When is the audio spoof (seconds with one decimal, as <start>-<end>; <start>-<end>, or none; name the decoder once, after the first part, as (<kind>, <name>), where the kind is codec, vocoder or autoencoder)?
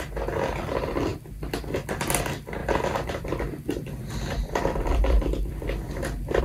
2.6-6.4 (vocoder, BigVGAN v2)